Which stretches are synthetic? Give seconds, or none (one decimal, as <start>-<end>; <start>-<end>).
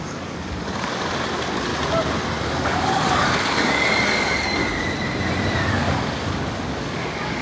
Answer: 0.0-1.7; 2.4-4.6; 5.7-7.4